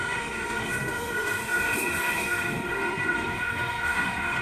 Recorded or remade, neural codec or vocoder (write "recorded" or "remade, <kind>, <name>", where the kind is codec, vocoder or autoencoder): remade, autoencoder, DAC-VAE